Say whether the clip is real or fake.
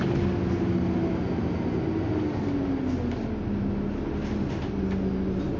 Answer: real